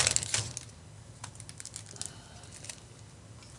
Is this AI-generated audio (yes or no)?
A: no